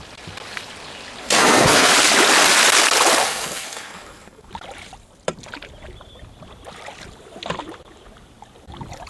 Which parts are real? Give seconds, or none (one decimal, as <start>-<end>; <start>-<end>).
0.0-1.2; 1.9-3.2; 4.5-9.1